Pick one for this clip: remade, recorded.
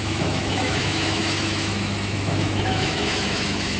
remade